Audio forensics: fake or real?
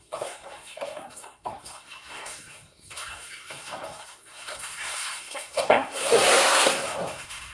fake